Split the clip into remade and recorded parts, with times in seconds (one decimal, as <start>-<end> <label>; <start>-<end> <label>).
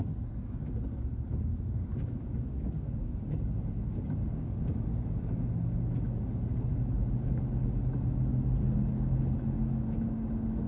0.0-1.3 recorded; 1.3-3.5 remade; 3.5-4.2 recorded; 4.2-5.2 remade; 5.2-10.7 recorded